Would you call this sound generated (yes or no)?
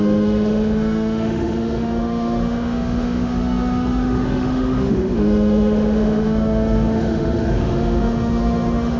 yes